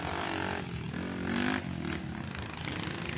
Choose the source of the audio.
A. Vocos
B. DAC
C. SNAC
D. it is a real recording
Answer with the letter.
D